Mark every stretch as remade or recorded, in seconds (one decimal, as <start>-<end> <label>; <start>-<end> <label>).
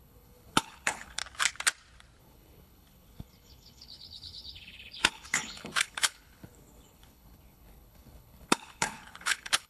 0.0-1.2 remade; 1.2-2.2 recorded; 2.2-9.7 remade